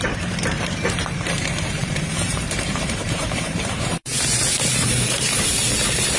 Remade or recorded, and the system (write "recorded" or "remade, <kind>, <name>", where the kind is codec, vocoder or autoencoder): remade, vocoder, BigVGAN v2